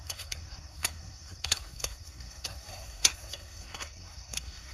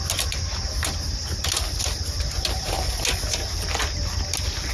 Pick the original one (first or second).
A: second